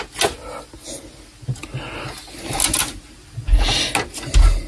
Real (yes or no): yes